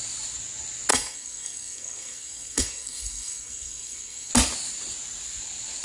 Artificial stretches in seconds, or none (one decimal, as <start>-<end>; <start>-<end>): 0.9-4.3